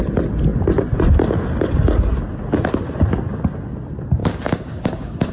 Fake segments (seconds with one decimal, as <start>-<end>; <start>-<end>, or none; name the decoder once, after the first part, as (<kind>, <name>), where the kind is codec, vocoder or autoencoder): 4.2-5.3 (codec, DAC)